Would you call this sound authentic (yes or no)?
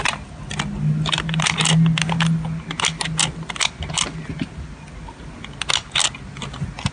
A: yes